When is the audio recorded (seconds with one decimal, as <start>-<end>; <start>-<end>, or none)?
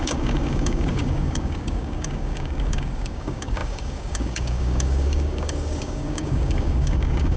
none